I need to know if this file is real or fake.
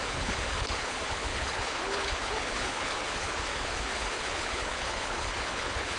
fake